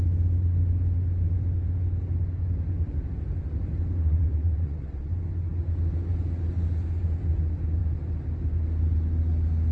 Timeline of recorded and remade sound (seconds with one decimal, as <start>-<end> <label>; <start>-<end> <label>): 0.0-4.0 recorded; 4.0-5.1 remade; 5.1-9.7 recorded